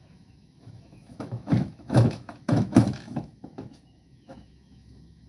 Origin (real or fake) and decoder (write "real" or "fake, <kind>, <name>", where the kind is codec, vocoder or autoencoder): fake, autoencoder, DAC-VAE